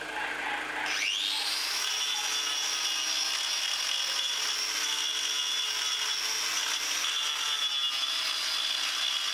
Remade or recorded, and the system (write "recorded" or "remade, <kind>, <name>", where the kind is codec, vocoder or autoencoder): recorded